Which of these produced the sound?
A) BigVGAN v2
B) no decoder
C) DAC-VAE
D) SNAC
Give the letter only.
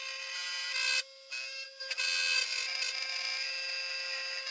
B